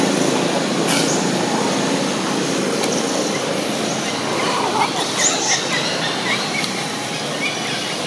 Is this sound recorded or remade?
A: recorded